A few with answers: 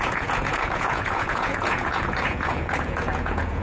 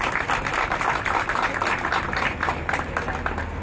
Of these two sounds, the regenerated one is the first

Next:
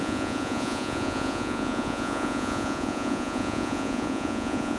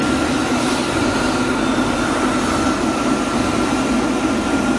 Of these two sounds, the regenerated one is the first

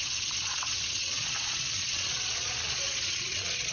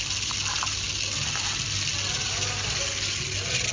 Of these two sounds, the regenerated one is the first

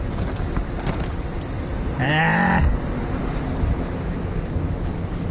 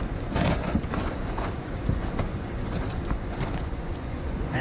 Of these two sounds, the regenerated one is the second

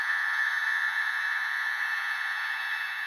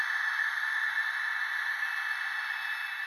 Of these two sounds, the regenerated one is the first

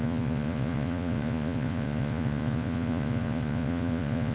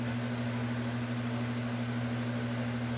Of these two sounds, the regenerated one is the first